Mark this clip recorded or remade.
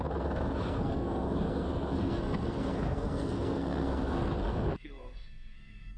remade